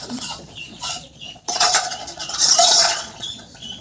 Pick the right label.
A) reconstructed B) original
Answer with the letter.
A